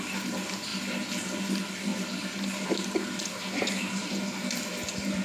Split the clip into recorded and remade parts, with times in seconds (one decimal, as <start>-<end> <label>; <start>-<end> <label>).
0.0-5.2 recorded